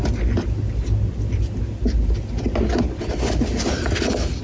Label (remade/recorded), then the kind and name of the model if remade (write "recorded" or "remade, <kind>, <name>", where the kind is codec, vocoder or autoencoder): recorded